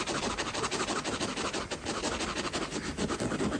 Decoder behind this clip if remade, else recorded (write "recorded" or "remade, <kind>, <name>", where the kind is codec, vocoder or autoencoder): recorded